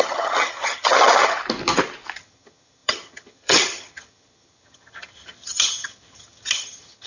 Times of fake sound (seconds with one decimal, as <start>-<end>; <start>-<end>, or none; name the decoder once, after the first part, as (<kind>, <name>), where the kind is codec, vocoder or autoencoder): 0.0-1.4 (vocoder, HiFi-GAN); 2.2-7.1